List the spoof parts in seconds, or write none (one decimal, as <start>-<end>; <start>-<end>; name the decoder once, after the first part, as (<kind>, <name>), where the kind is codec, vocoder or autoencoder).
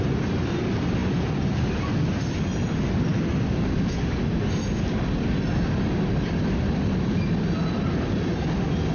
none